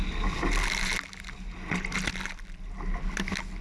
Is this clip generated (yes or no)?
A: no